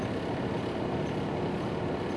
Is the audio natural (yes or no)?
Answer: yes